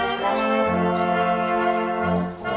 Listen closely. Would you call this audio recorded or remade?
recorded